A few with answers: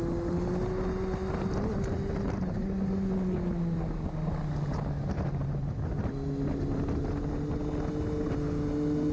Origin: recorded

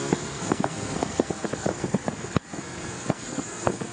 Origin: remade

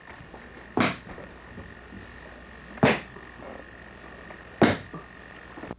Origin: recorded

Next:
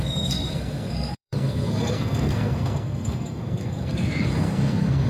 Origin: remade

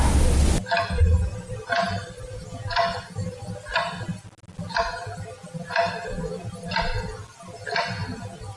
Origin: recorded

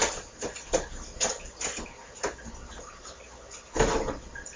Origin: recorded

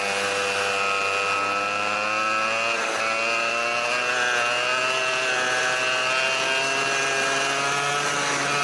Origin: recorded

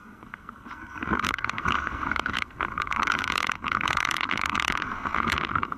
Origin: remade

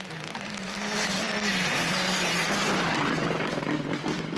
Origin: recorded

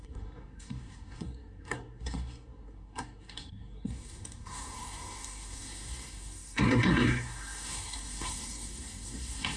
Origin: remade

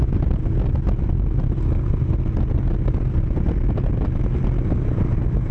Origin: recorded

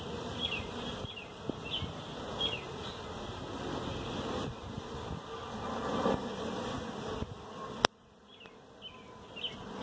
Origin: recorded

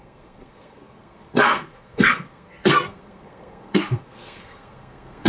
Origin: remade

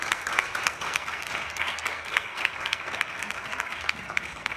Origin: remade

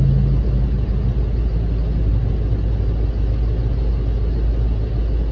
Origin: recorded